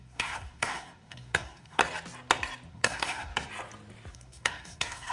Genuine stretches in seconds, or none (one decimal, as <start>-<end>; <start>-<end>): 1.8-2.7; 3.3-4.1